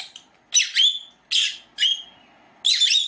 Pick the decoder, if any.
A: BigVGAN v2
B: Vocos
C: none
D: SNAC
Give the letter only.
C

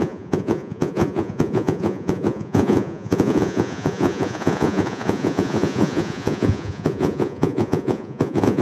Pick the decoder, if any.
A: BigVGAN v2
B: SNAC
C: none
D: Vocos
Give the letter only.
D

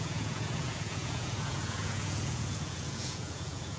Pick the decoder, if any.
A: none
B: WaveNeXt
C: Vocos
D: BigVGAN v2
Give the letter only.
C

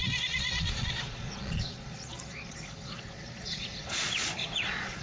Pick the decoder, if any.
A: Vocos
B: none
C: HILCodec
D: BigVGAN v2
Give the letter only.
A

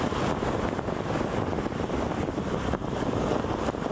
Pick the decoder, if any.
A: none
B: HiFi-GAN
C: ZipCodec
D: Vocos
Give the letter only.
A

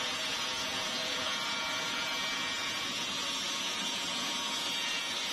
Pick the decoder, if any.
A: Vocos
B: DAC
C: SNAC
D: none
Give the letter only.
A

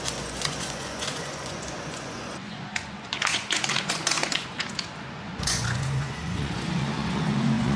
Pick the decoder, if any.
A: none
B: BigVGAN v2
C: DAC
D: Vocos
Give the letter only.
D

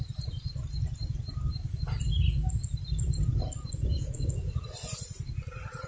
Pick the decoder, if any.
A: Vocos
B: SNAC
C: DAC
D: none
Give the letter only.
D